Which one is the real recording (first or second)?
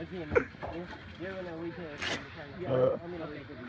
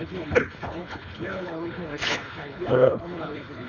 first